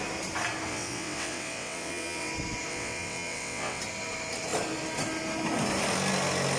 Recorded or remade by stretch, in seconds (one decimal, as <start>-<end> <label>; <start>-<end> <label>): 0.0-0.7 recorded; 0.7-2.3 remade; 2.3-2.7 recorded; 2.7-3.8 remade; 3.8-6.6 recorded